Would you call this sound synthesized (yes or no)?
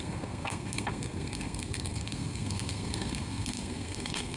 yes